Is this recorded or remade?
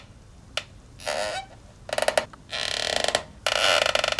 recorded